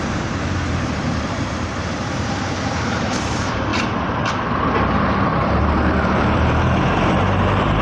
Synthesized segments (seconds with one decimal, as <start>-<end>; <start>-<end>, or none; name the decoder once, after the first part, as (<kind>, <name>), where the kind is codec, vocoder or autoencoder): 0.0-3.7 (vocoder, BigVGAN v2); 4.3-7.8